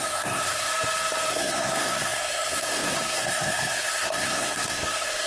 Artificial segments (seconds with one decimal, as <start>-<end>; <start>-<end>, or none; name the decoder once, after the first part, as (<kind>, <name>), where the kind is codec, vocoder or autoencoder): 0.0-0.7 (codec, SNAC); 1.3-5.3